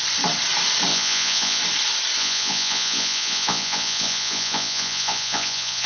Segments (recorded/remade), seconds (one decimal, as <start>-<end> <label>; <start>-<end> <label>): 0.0-0.9 recorded; 0.9-1.6 remade; 1.6-2.2 recorded; 2.2-5.9 remade